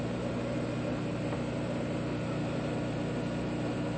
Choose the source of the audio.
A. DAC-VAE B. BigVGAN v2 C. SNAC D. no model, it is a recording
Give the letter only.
D